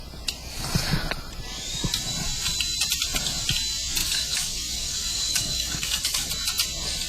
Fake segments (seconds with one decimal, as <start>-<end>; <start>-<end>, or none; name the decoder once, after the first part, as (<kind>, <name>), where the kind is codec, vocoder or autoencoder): 4.0-6.3 (codec, DAC)